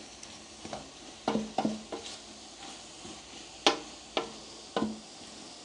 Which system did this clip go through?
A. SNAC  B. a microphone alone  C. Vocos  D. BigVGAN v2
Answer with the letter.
B